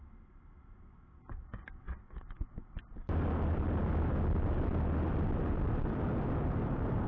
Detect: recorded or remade recorded